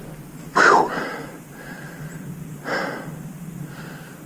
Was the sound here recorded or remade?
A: remade